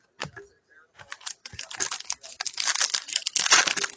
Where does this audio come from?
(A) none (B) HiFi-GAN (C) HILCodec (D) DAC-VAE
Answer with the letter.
A